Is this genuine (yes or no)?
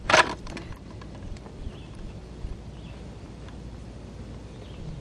no